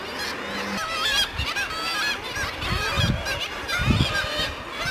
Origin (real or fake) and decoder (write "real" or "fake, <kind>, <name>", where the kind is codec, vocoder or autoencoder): real